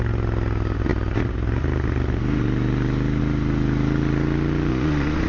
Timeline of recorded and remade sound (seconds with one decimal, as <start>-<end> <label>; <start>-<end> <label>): 0.0-4.7 recorded; 4.7-5.3 remade